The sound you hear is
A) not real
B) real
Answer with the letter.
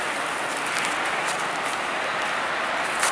B